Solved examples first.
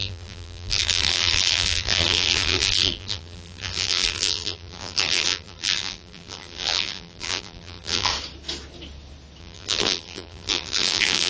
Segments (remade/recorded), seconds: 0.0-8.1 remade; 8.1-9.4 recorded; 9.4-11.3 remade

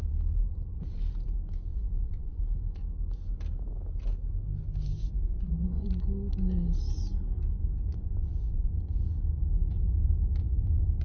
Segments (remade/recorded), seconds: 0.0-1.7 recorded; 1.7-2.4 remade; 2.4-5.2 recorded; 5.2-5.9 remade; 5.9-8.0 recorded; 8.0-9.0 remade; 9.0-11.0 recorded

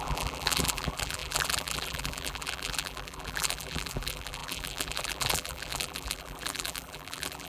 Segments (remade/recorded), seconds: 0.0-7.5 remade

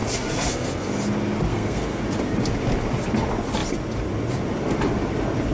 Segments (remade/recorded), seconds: 0.0-0.9 remade; 0.9-1.5 recorded; 1.5-2.0 remade; 2.0-5.5 recorded

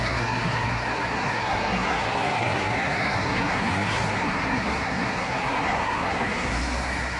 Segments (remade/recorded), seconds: 0.0-7.2 remade

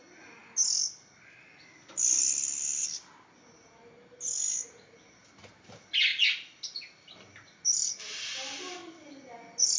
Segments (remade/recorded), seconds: 0.0-9.8 recorded